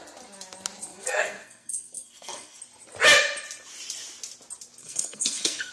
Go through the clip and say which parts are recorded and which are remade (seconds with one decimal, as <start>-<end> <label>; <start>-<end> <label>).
0.0-0.9 recorded; 0.9-2.6 remade; 2.6-4.8 recorded; 4.8-5.7 remade